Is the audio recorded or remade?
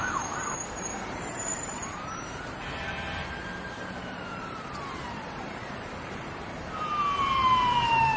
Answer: remade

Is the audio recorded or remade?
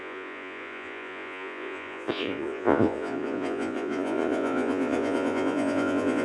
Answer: remade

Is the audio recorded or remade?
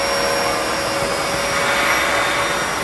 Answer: recorded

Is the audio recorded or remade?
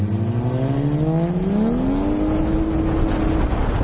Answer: recorded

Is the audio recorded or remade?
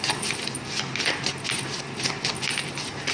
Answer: recorded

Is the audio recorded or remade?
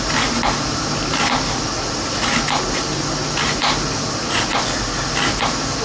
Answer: recorded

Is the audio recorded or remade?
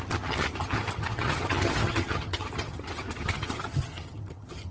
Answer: remade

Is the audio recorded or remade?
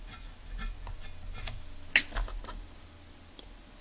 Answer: recorded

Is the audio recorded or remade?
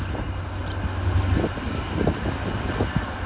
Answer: recorded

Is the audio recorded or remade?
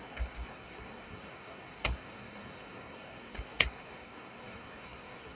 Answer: remade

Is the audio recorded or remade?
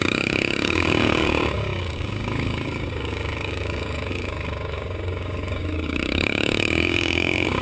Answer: remade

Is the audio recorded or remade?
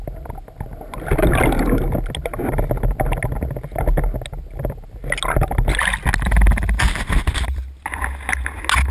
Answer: recorded